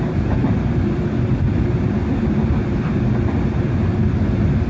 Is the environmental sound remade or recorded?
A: recorded